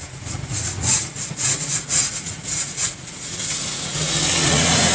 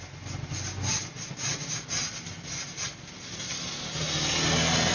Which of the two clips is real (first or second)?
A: second